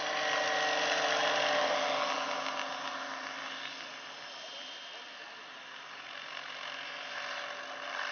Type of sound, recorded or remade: recorded